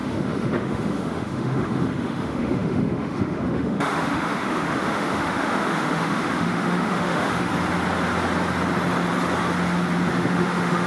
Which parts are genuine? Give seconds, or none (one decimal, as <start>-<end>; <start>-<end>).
7.5-10.1